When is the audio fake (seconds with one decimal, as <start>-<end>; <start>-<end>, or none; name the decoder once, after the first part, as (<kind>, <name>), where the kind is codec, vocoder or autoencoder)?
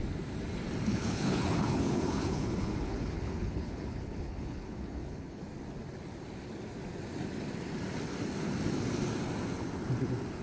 0.9-5.4 (codec, HILCodec)